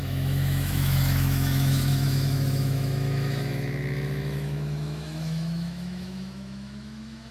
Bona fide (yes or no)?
no